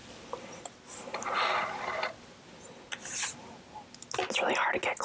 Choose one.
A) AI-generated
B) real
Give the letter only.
B